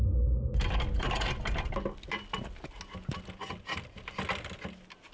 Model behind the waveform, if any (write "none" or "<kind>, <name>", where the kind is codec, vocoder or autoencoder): none